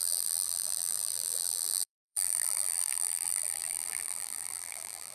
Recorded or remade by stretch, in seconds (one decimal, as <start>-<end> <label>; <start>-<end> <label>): 0.0-5.1 remade